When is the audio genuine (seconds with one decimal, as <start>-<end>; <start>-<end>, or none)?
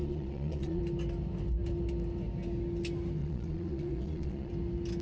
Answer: 0.8-3.2; 4.5-5.0